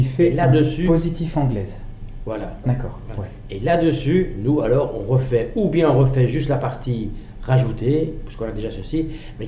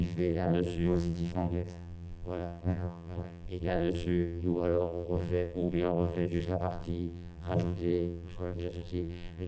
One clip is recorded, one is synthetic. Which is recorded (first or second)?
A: first